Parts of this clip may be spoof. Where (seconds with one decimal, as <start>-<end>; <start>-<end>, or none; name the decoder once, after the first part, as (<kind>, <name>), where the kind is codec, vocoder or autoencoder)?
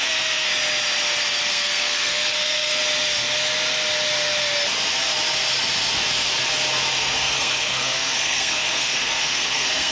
0.0-0.5 (codec, SNAC); 1.5-2.8; 6.9-9.9